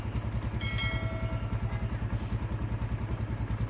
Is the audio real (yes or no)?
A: yes